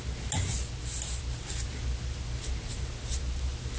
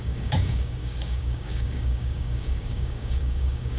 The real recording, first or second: first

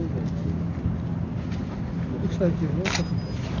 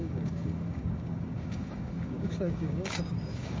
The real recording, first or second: first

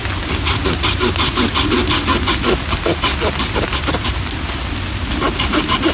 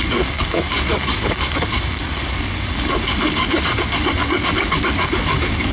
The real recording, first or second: first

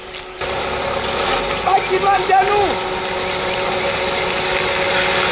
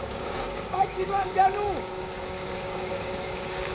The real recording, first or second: first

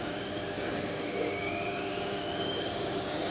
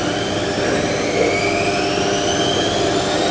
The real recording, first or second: second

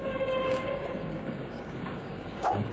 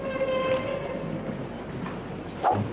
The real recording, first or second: second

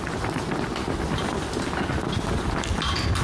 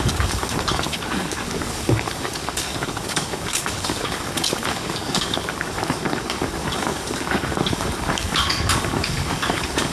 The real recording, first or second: first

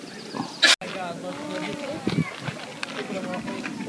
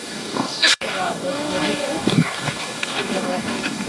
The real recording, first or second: first